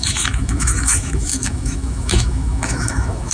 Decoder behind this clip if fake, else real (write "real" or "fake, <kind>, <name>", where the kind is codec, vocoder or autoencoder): fake, autoencoder, DAC-VAE